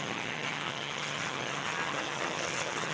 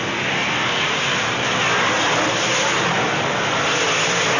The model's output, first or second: first